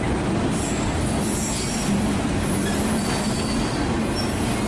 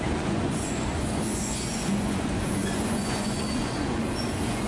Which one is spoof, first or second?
second